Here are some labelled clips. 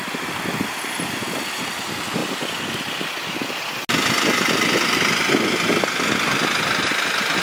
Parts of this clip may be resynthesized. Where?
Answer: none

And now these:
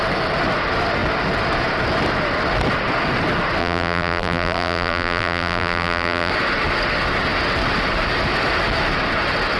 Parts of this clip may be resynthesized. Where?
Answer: 3.6-6.3 (vocoder, BigVGAN v2)

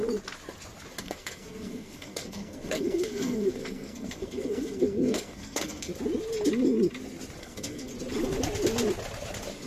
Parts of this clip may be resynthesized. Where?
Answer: 1.0-5.9 (codec, SNAC); 7.4-7.9